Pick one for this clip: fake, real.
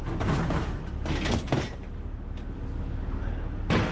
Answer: real